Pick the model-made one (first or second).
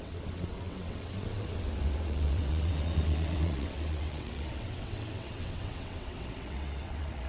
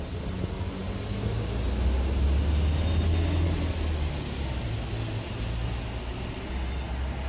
first